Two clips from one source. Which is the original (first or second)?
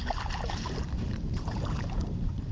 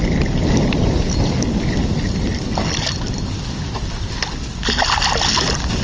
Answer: second